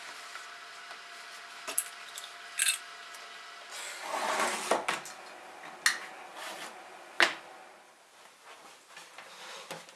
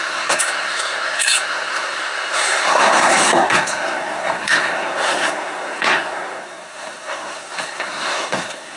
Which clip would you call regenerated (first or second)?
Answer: second